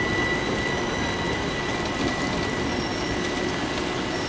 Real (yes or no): yes